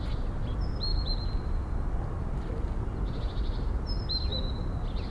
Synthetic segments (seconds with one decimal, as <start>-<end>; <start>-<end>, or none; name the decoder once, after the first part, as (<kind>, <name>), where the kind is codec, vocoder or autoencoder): none